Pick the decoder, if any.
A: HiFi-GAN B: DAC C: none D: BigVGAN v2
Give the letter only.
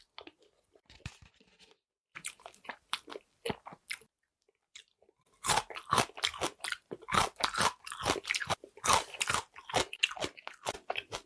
C